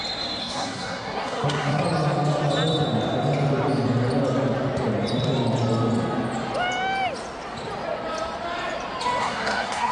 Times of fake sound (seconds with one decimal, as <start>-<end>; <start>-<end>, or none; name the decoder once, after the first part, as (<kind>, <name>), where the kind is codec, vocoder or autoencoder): 0.4-1.8 (codec, SNAC); 9.2-9.9